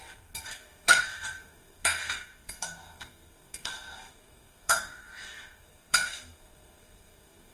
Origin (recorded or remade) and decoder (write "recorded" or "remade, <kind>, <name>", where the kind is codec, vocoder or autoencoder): remade, codec, SNAC